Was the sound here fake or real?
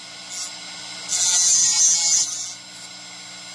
real